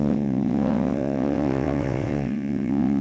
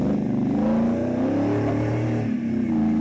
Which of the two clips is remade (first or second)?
first